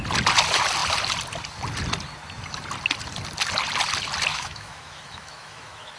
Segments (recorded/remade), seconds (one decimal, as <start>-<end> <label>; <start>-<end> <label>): 0.0-4.3 recorded; 4.3-6.0 remade